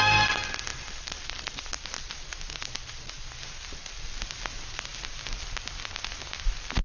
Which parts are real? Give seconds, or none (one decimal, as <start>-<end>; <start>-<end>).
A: 0.0-0.7; 1.7-6.8